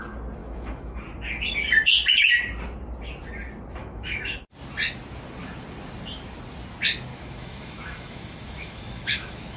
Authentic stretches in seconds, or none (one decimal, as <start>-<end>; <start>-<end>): 0.0-0.4; 1.0-3.8; 4.5-7.1